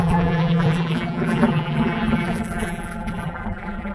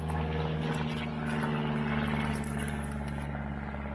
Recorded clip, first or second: second